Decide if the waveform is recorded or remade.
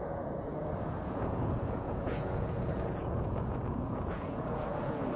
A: remade